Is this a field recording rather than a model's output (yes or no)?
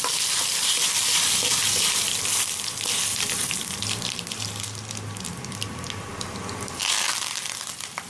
yes